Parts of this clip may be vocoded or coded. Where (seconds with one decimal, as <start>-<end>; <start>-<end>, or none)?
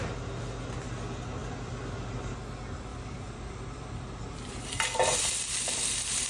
2.9-5.5